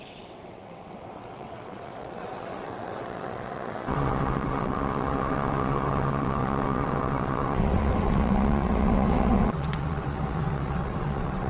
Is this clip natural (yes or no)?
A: no